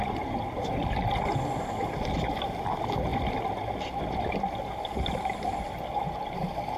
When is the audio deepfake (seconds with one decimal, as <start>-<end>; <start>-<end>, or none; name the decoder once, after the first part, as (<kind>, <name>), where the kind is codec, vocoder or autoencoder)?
none